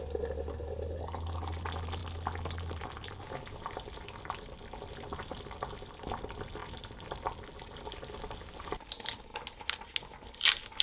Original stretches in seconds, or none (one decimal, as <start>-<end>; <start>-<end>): 0.0-10.8